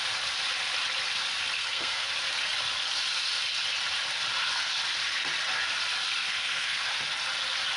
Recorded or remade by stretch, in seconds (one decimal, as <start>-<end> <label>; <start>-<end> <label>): 0.0-1.6 recorded; 1.6-2.1 remade; 2.1-6.2 recorded; 6.2-6.9 remade; 6.9-7.8 recorded